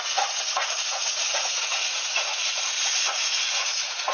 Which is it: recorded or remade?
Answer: remade